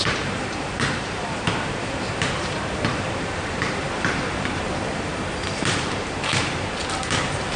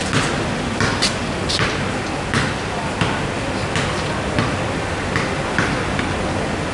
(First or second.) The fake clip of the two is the first